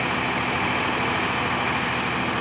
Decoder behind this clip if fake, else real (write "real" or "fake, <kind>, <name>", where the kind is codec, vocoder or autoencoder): real